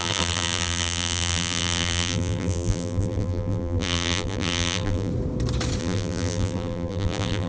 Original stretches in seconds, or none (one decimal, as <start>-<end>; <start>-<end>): 5.1-5.8